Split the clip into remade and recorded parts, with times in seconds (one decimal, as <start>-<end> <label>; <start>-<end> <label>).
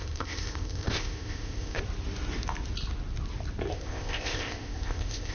0.0-1.8 remade; 1.8-3.7 recorded; 3.7-5.3 remade